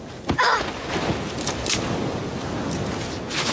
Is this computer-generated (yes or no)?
no